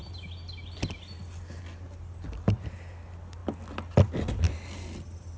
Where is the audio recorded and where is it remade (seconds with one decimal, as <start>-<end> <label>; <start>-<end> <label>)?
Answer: 0.0-5.4 recorded